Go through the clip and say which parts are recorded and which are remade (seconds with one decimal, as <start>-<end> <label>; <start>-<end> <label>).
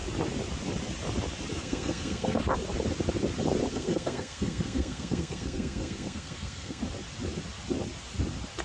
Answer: 0.0-1.5 recorded; 1.5-2.4 remade; 2.4-3.7 recorded; 3.7-6.8 remade; 6.8-8.6 recorded